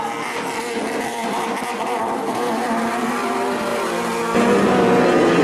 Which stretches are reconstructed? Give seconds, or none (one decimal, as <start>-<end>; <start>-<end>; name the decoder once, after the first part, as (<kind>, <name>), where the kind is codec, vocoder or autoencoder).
1.1-3.3 (vocoder, BigVGAN v2); 3.7-4.2